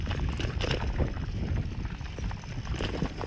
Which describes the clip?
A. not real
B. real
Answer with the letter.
B